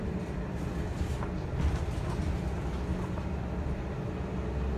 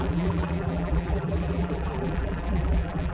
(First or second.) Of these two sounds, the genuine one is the first